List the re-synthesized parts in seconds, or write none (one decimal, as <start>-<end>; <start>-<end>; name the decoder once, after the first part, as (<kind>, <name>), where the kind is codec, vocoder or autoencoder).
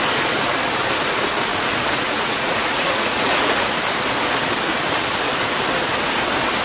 1.5-3.7 (vocoder, Vocos)